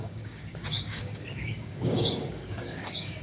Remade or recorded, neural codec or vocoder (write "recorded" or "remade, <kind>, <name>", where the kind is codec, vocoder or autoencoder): remade, codec, DAC